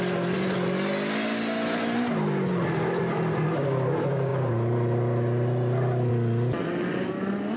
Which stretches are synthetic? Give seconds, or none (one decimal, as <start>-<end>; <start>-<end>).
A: none